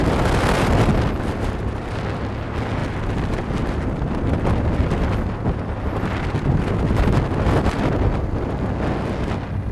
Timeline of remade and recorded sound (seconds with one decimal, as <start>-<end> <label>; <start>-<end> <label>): 0.0-9.7 recorded